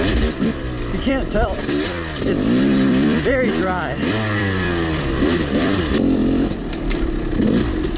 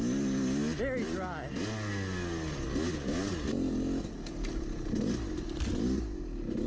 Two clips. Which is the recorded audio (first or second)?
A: second